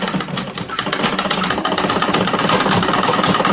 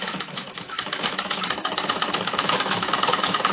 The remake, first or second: second